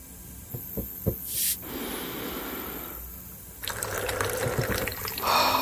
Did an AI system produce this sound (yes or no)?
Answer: no